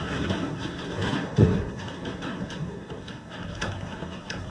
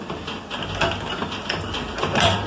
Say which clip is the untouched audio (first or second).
second